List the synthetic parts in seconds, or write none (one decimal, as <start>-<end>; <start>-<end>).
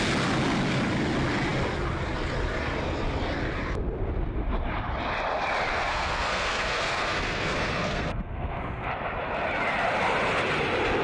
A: 5.7-8.9